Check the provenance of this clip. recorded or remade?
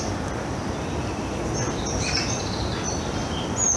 recorded